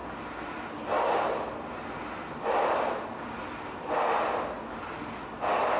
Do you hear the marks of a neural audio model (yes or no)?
no